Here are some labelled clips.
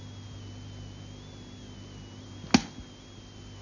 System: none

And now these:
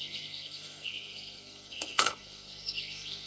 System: codec, SNAC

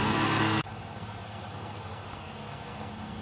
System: codec, SNAC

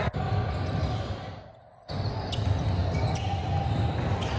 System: none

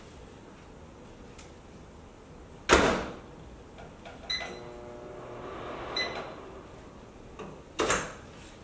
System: none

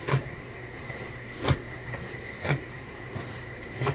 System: codec, SNAC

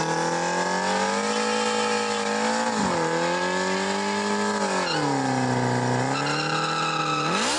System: none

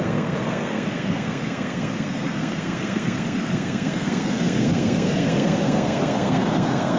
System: codec, SNAC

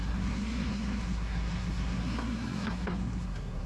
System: codec, SNAC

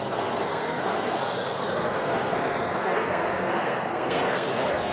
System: codec, SNAC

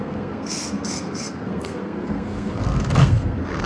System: codec, SNAC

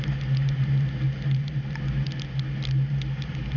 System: none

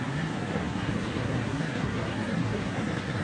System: codec, SNAC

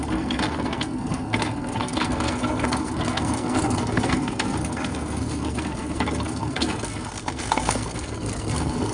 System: codec, SNAC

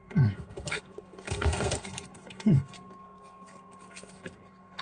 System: codec, SNAC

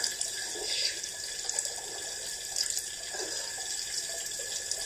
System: none